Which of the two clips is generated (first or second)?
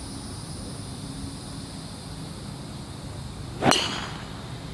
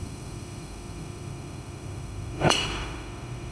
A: second